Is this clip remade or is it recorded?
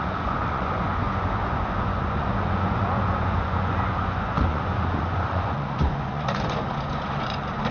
remade